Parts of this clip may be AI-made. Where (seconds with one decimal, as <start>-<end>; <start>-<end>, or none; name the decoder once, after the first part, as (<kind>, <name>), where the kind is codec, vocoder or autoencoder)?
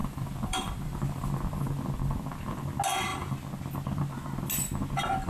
0.0-1.3 (vocoder, BigVGAN v2)